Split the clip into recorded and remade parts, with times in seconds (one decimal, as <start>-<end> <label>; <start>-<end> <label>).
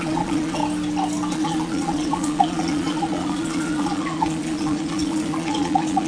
0.0-0.6 remade; 0.6-1.3 recorded; 1.3-6.1 remade